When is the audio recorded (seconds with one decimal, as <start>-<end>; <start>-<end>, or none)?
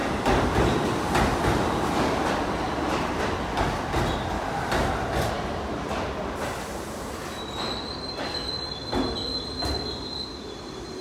0.0-11.0